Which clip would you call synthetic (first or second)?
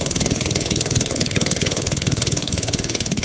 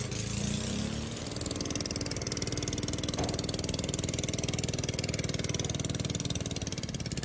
first